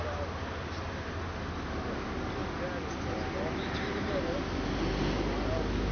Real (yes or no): yes